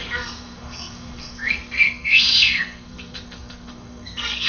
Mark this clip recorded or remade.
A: remade